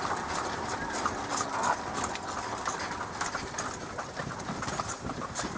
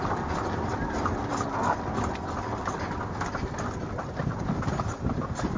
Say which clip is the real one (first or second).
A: second